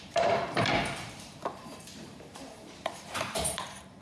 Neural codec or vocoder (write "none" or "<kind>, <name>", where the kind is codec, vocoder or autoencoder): vocoder, BigVGAN v2